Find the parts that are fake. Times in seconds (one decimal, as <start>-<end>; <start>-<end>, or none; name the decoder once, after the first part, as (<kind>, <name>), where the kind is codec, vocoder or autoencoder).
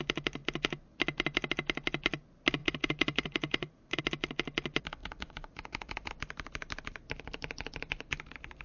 2.6-4.0 (vocoder, Vocos); 5.0-6.1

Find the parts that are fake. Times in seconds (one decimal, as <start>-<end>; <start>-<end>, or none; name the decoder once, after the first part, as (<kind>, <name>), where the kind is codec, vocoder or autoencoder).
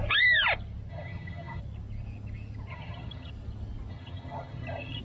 0.9-1.6 (vocoder, HiFi-GAN); 2.7-3.3; 3.9-5.0